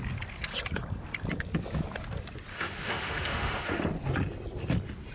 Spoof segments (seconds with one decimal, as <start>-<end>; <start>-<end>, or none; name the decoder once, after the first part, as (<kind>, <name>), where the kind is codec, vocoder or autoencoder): 2.5-3.8 (autoencoder, DAC-VAE)